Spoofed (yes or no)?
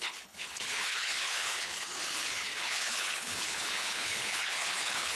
yes